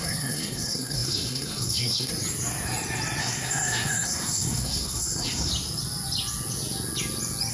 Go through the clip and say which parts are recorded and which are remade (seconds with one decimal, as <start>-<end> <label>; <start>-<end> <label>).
0.0-2.1 remade; 2.1-3.2 recorded; 3.2-5.5 remade; 5.5-7.5 recorded